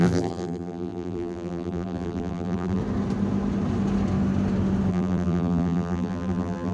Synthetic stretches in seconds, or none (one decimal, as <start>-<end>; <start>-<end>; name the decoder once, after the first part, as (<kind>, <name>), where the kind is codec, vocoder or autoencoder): 0.0-2.8 (vocoder, BigVGAN v2); 4.9-6.7